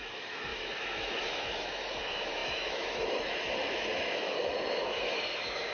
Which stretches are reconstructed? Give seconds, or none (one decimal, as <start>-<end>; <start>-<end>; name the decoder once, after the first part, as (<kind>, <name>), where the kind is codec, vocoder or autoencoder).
0.0-5.7 (autoencoder, DAC-VAE)